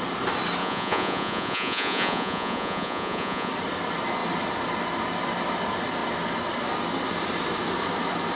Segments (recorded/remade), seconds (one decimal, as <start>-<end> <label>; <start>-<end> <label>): 0.0-0.6 recorded; 0.6-3.5 remade; 3.5-8.4 recorded